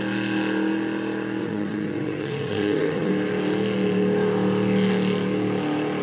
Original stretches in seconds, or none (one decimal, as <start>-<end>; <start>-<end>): 0.0-1.4; 3.1-6.0